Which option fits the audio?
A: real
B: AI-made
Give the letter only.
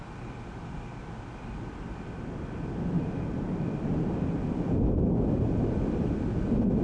A